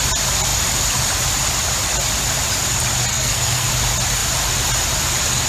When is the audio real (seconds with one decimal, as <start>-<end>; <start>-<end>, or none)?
0.0-3.1; 3.7-5.5